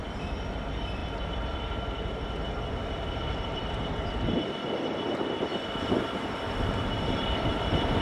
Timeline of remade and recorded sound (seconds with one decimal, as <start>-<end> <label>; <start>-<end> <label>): 0.0-5.5 remade; 5.5-6.0 recorded; 6.0-8.0 remade